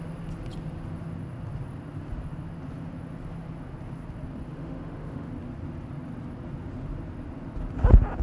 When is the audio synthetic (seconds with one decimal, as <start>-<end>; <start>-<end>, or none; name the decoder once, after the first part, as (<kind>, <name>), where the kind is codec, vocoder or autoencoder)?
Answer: 4.5-5.3 (autoencoder, DAC-VAE)